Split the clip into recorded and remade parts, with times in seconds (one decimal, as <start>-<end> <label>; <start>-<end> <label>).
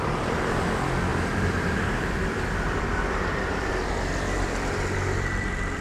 0.0-1.1 recorded; 1.1-3.8 remade; 3.8-5.8 recorded